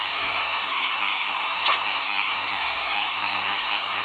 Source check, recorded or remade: remade